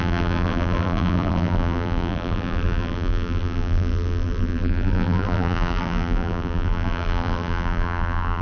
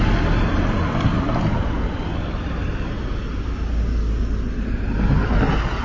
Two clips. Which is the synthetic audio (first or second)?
first